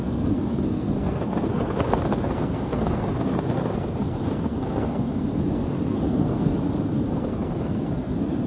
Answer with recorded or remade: remade